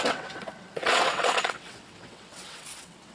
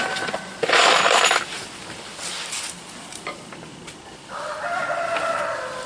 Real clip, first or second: second